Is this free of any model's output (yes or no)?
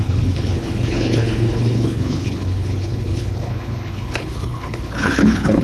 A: no